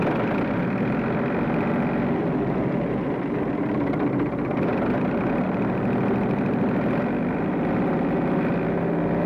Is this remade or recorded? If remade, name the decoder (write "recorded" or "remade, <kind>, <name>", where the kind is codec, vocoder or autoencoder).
recorded